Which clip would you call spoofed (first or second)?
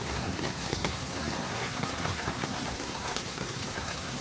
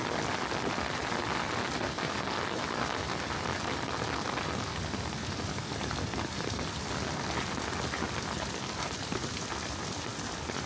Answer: first